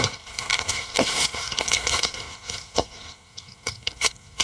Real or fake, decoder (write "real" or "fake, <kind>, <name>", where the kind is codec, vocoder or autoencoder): fake, codec, SNAC